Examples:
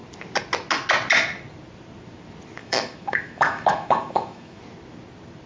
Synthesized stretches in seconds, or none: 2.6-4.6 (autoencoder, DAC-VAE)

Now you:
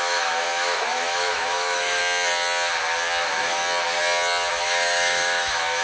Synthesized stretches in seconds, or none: 0.0-2.0 (autoencoder, DAC-VAE); 3.2-3.6; 4.5-5.8

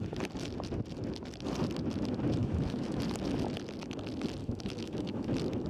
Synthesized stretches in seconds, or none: 2.4-3.0 (autoencoder, DAC-VAE); 4.4-5.3

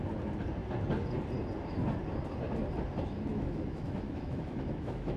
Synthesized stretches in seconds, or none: 3.3-5.2 (autoencoder, DAC-VAE)

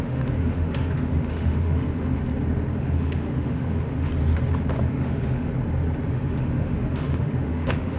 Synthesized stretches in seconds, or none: 0.0-2.2 (autoencoder, DAC-VAE); 2.8-4.1; 4.9-5.5; 6.1-8.0